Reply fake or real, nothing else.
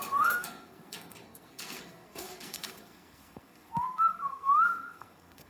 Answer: fake